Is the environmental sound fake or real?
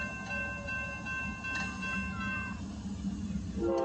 real